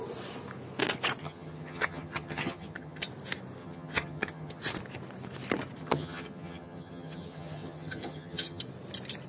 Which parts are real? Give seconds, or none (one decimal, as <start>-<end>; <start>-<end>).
0.0-1.2; 3.1-3.6; 4.6-5.8; 8.6-9.3